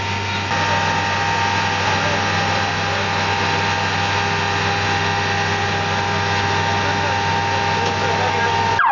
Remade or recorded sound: recorded